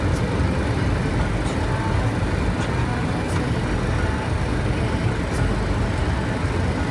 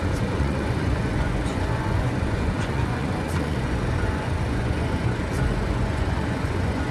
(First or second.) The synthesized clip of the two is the second